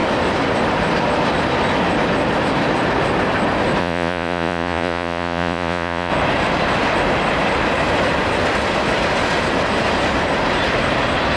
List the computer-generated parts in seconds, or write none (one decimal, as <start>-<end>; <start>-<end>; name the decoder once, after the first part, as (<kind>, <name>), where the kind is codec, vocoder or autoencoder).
3.8-6.1 (vocoder, Vocos)